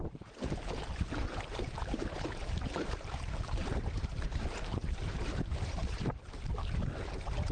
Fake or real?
fake